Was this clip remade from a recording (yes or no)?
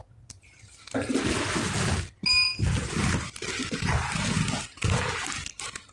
no